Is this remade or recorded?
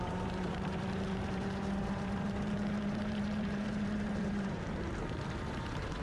remade